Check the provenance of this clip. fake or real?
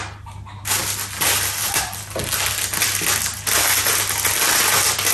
real